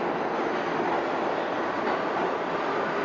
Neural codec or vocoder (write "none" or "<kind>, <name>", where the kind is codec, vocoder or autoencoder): none